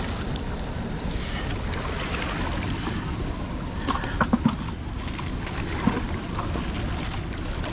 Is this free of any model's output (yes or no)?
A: yes